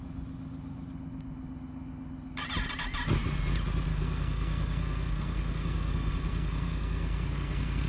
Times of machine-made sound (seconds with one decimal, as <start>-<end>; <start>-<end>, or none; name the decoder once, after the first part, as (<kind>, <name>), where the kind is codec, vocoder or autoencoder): 3.9-7.9 (codec, SNAC)